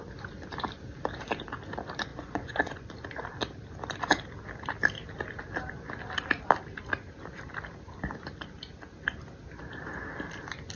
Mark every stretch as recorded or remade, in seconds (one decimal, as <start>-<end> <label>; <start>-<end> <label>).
0.0-2.1 recorded; 2.1-2.9 remade; 2.9-10.8 recorded